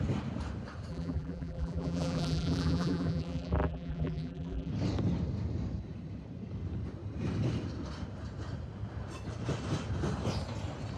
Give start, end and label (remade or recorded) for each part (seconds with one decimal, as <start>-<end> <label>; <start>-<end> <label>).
0.0-0.9 recorded; 0.9-4.7 remade; 4.7-11.0 recorded

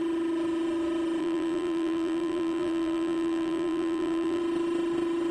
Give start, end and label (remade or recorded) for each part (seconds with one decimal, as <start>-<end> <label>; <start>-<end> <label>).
0.0-1.2 recorded; 1.2-4.4 remade; 4.4-5.3 recorded